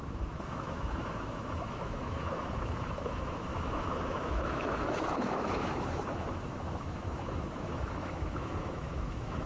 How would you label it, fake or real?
fake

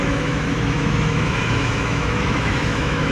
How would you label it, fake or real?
fake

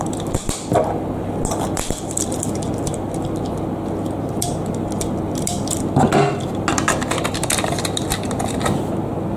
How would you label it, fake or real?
real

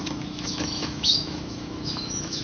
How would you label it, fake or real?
fake